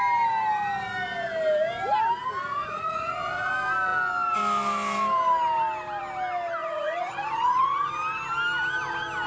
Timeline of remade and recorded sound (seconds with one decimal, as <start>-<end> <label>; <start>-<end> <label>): 0.0-2.5 recorded; 2.5-3.5 remade; 3.5-6.6 recorded; 6.6-7.9 remade; 7.9-9.3 recorded